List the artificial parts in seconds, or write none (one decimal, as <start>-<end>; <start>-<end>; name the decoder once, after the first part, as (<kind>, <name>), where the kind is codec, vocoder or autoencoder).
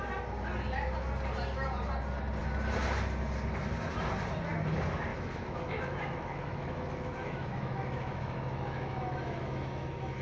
5.1-10.2 (autoencoder, DAC-VAE)